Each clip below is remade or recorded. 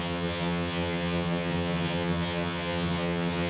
remade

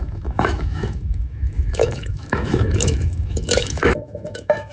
remade